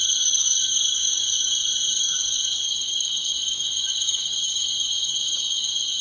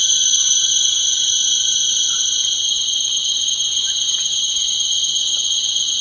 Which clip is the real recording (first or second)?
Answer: second